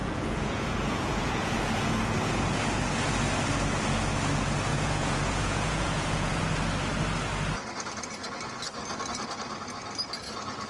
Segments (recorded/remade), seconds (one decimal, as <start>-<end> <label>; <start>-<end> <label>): 0.0-2.6 remade; 2.6-4.7 recorded; 4.7-6.4 remade; 6.4-10.7 recorded